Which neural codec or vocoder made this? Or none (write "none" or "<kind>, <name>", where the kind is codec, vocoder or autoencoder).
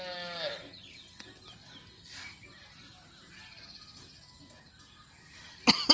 none